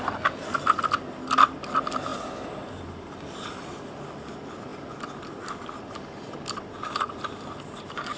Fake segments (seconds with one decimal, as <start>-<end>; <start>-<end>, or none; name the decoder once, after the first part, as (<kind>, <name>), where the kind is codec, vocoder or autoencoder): none